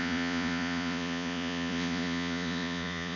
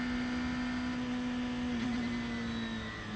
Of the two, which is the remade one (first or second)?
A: first